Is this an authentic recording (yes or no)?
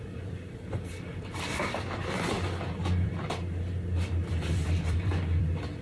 no